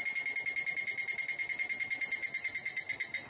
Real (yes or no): yes